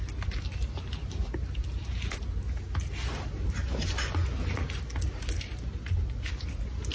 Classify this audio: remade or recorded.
recorded